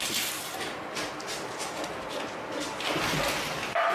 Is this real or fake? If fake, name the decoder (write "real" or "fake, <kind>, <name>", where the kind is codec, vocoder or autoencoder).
real